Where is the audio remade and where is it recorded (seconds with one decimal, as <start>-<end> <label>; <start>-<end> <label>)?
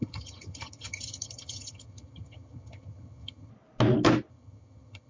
0.0-3.5 remade; 3.5-4.3 recorded; 4.3-5.1 remade